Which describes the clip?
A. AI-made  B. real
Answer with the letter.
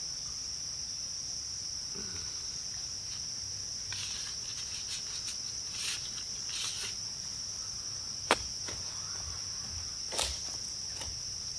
B